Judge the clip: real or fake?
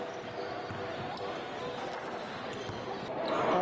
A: real